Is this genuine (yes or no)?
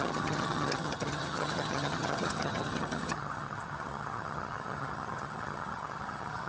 no